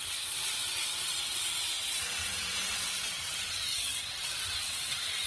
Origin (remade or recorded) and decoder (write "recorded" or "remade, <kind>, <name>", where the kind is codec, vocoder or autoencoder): remade, vocoder, WaveNeXt